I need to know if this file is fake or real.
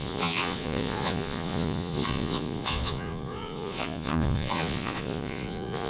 fake